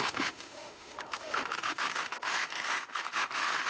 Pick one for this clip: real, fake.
fake